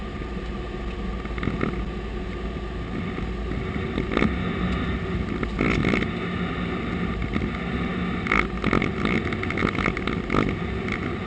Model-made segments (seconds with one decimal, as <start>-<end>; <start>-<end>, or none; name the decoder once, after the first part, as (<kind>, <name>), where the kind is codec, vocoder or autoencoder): none

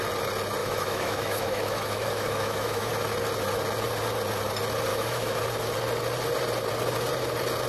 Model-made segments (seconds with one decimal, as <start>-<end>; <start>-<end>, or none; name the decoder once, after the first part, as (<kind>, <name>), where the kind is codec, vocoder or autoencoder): 0.6-2.9 (autoencoder, DAC-VAE); 4.9-5.4

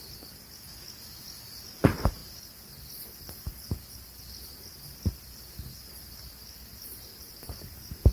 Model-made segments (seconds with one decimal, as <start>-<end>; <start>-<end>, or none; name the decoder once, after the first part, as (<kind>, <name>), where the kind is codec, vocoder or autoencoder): none

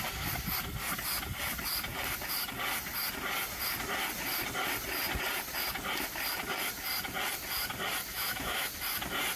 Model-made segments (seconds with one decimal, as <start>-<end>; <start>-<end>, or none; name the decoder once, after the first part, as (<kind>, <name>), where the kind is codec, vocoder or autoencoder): 8.1-8.7 (autoencoder, DAC-VAE)

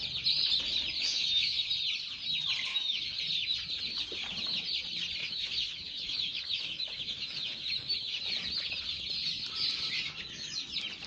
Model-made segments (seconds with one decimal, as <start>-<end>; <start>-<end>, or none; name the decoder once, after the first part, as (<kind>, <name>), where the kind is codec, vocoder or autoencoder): 1.1-1.7 (autoencoder, DAC-VAE); 2.7-3.2; 5.2-8.2